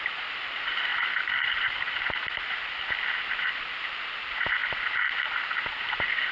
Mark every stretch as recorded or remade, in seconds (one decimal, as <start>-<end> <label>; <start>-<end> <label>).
0.0-6.3 recorded